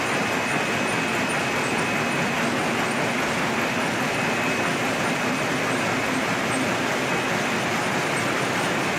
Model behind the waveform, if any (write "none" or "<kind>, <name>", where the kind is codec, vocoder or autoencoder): none